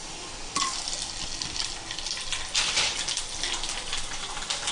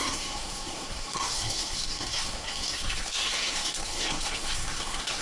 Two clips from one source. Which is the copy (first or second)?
second